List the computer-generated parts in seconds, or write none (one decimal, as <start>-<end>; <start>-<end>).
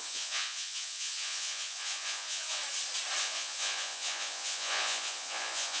0.0-2.6; 3.2-5.8